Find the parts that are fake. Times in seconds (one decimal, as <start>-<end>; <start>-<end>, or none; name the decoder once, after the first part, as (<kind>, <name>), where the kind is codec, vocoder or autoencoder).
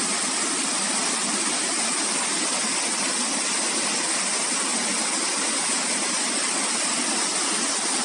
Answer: none